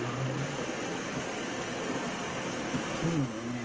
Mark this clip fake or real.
real